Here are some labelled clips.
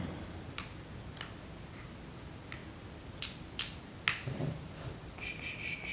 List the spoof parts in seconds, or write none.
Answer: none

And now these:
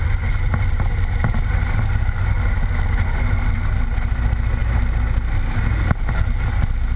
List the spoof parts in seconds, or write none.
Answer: none

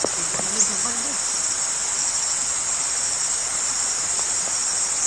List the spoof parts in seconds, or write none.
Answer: none

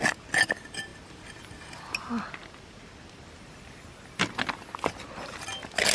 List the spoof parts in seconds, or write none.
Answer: none

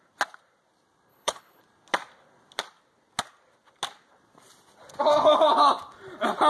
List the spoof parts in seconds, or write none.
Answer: 1.1-1.6

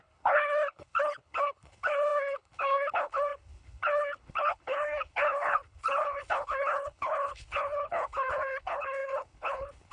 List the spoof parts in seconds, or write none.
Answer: 0.0-9.9

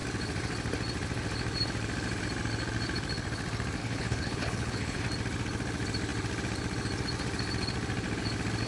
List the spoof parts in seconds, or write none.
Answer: 3.8-5.0